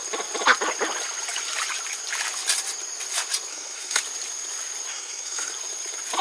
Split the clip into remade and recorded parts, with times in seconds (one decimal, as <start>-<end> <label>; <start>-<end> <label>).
0.0-3.5 recorded; 3.5-4.0 remade; 4.0-4.9 recorded; 4.9-5.5 remade; 5.5-6.2 recorded